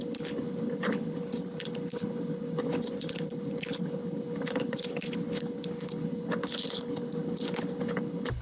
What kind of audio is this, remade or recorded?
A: remade